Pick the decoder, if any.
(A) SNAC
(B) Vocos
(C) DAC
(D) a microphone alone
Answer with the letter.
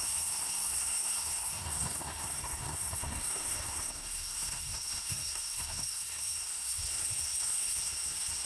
A